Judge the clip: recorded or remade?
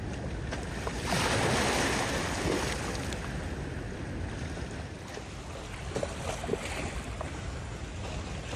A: recorded